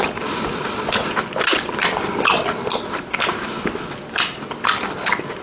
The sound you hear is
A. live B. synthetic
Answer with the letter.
A